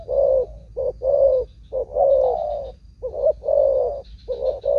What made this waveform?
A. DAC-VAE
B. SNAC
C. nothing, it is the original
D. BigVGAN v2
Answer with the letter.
C